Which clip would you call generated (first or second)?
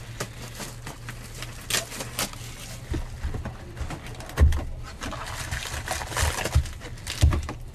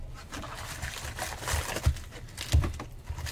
second